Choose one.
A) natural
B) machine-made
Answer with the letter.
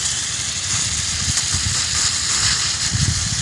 A